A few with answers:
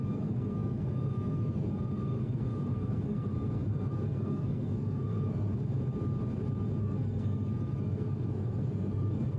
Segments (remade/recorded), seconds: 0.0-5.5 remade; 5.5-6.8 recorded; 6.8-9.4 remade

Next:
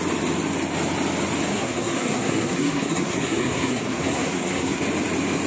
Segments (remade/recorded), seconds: 0.0-1.5 recorded; 1.5-4.8 remade; 4.8-5.5 recorded

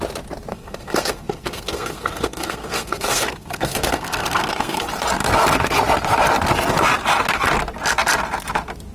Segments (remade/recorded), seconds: 0.0-0.5 recorded; 0.5-4.9 remade; 4.9-8.9 recorded

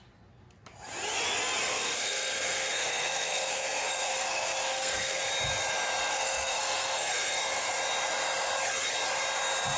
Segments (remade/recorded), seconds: 0.0-1.7 recorded; 1.7-5.3 remade; 5.3-6.1 recorded; 6.1-7.4 remade; 7.4-9.8 recorded

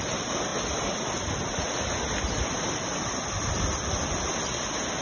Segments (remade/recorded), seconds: 0.0-5.0 recorded

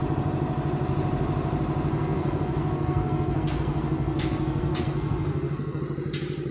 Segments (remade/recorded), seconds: 0.0-1.9 recorded; 1.9-5.8 remade; 5.8-6.5 recorded